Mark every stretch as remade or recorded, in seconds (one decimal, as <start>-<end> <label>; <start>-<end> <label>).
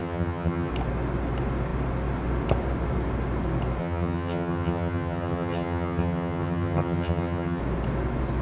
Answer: 0.0-0.7 remade; 0.7-3.8 recorded; 3.8-7.6 remade; 7.6-8.4 recorded